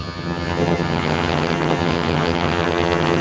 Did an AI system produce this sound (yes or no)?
yes